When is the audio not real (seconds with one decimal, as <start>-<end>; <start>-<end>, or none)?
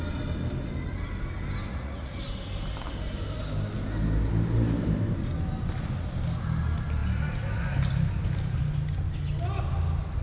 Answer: 1.7-2.2